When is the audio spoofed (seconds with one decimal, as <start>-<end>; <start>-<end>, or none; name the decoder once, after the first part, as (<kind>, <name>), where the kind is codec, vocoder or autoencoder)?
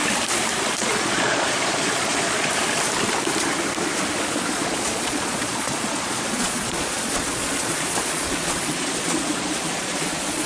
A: 0.8-2.5 (vocoder, Vocos); 4.5-10.5